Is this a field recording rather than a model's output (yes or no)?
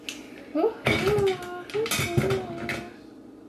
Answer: yes